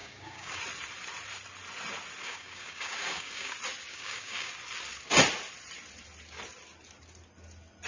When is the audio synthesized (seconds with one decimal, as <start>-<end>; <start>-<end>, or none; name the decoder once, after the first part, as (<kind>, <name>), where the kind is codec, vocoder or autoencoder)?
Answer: 0.0-0.6 (codec, DAC); 2.2-3.5; 3.9-4.5